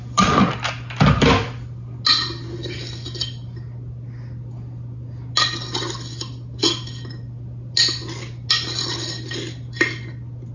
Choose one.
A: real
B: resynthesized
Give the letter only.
A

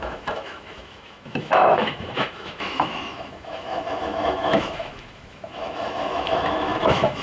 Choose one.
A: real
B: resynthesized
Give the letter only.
B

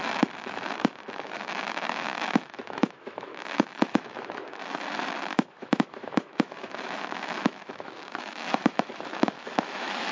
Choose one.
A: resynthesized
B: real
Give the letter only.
A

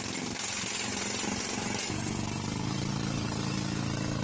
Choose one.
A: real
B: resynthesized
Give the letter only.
A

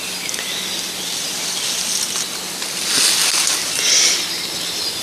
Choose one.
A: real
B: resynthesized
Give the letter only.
A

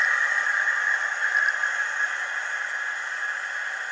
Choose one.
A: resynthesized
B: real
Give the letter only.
B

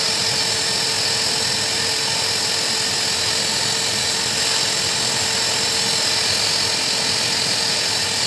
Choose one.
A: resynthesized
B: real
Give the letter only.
B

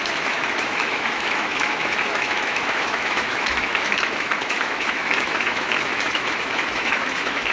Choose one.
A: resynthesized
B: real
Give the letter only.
A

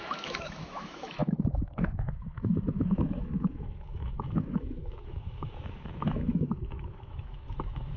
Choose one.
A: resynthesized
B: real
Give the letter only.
A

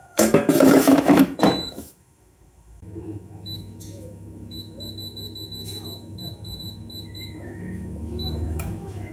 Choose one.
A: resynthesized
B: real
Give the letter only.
A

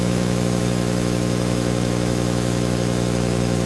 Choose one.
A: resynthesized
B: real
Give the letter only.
A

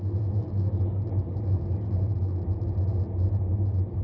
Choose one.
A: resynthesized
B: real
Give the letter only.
B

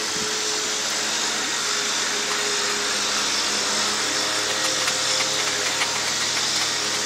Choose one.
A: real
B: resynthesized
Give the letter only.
A